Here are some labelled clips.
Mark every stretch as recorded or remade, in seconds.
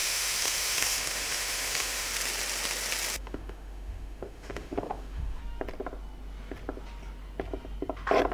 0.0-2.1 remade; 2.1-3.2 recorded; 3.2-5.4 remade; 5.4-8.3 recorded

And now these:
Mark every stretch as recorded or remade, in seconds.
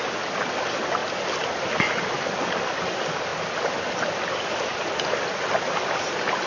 0.0-6.5 recorded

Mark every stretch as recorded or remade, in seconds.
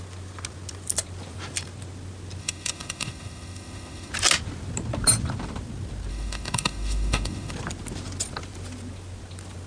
0.0-2.4 recorded; 2.4-4.1 remade; 4.1-6.1 recorded; 6.1-7.5 remade; 7.5-9.7 recorded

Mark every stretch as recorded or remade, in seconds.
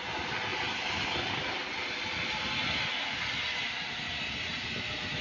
0.0-5.2 recorded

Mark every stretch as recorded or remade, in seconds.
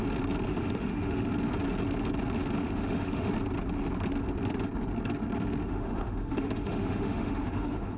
0.0-0.5 recorded; 0.5-1.3 remade; 1.3-2.6 recorded; 2.6-3.3 remade; 3.3-5.6 recorded; 5.6-8.0 remade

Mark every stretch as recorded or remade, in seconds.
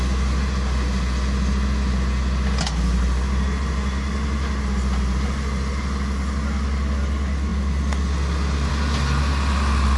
0.0-10.0 recorded